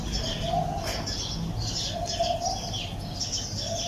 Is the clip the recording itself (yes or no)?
yes